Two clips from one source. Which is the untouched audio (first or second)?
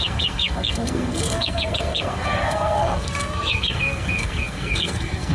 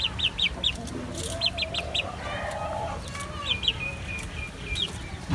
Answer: second